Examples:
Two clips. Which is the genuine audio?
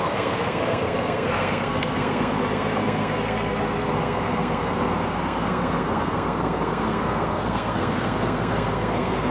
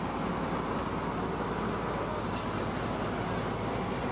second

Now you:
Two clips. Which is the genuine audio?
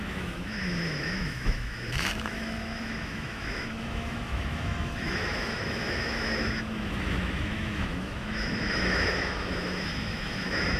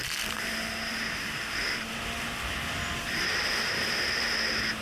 second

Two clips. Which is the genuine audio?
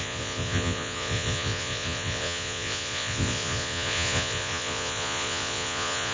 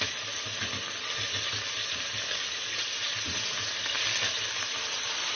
second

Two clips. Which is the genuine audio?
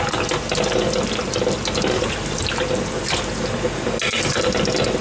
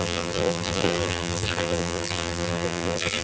first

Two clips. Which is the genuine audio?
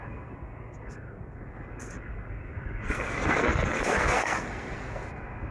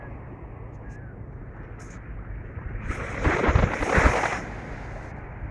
second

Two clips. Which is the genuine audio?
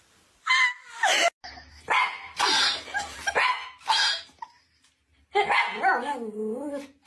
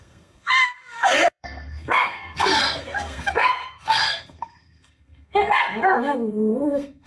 first